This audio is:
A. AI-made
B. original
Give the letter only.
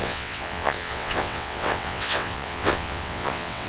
A